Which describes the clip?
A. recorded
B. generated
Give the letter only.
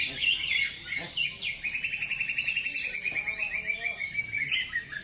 A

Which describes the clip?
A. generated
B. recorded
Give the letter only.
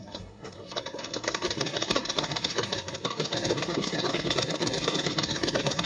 A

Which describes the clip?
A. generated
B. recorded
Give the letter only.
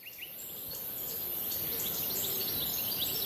B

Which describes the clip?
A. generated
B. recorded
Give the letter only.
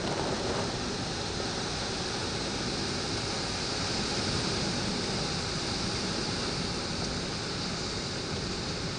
B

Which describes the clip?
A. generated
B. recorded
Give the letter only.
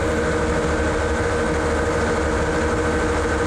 B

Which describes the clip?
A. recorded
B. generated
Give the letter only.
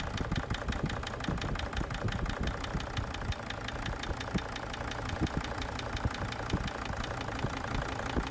A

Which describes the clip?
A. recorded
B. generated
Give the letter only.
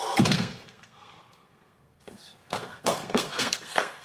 B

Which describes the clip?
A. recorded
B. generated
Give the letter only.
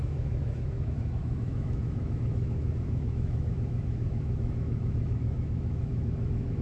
B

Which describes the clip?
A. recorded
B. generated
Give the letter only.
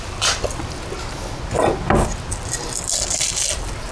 A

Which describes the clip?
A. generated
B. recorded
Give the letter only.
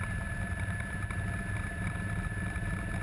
B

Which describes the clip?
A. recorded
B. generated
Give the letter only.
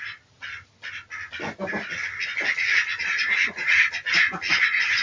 A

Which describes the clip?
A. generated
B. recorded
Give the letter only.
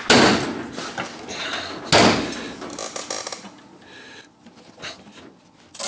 B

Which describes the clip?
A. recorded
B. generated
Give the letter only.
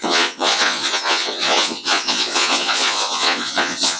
B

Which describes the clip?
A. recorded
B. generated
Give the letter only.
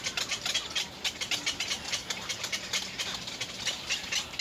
A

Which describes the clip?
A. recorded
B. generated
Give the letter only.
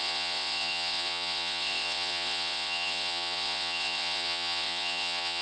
B